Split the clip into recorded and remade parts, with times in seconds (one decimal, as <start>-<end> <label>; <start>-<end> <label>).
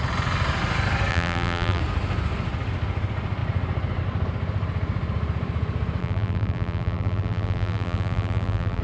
0.0-1.1 recorded; 1.1-1.8 remade; 1.8-6.0 recorded; 6.0-8.8 remade